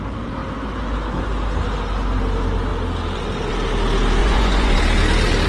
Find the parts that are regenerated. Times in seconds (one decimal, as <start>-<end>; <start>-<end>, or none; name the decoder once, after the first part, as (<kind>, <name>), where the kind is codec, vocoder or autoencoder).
4.2-4.8 (vocoder, Vocos)